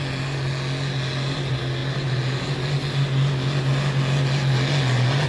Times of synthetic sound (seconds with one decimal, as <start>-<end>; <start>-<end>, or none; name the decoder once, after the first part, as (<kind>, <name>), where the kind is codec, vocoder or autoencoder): none